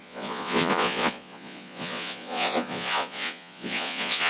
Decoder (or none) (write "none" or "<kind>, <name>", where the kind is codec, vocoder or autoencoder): vocoder, Vocos